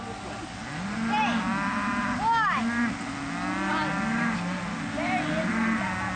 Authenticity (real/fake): real